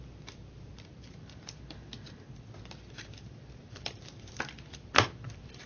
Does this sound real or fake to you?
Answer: fake